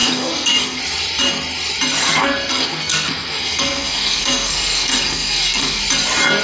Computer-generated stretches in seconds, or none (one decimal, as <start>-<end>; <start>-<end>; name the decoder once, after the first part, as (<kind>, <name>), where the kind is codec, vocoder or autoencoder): 0.0-0.8 (codec, SNAC); 2.0-5.8